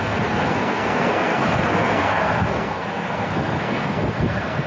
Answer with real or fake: fake